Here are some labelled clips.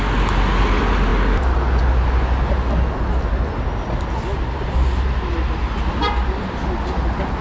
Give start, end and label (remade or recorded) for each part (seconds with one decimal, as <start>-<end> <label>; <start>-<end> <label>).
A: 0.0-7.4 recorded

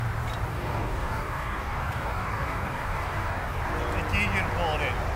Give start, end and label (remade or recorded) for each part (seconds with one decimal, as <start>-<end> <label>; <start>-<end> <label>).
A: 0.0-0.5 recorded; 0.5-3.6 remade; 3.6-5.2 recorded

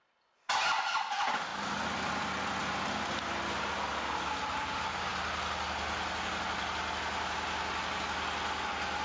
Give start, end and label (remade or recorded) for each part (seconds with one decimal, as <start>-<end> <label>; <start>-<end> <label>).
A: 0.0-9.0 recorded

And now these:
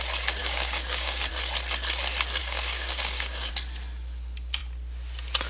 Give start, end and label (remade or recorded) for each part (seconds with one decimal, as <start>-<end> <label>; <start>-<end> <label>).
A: 0.0-0.4 recorded; 0.4-1.3 remade; 1.3-2.4 recorded; 2.4-3.5 remade; 3.5-5.5 recorded

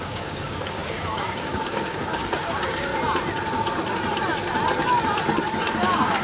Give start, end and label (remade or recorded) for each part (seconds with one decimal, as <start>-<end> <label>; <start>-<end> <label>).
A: 0.0-2.9 remade; 2.9-5.7 recorded; 5.7-6.2 remade